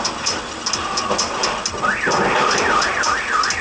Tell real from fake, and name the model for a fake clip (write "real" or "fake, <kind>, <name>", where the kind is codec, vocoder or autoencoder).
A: real